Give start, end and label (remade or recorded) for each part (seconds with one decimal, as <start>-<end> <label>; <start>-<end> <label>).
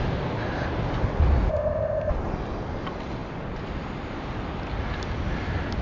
0.0-1.5 recorded; 1.5-2.1 remade; 2.1-5.8 recorded